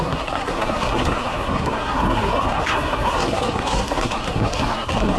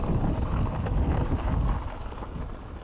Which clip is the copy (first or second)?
first